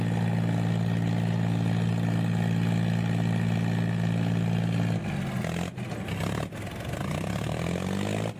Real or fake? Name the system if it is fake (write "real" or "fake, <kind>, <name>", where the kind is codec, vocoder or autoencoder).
real